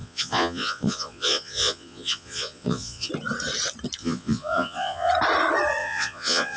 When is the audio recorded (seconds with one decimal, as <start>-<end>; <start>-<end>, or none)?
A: 3.1-4.0; 5.1-5.8